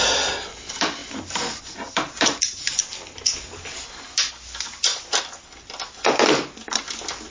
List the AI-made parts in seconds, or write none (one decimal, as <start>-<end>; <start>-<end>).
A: none